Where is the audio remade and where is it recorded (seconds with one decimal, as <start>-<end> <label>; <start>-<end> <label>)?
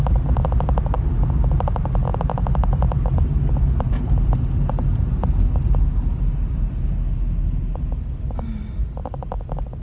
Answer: 0.0-9.8 recorded